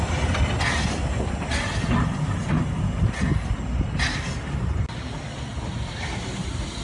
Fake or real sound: real